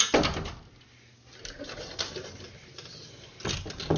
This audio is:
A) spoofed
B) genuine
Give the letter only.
B